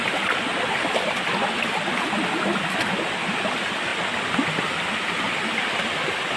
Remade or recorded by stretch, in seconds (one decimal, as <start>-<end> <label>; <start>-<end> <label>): 0.0-6.4 recorded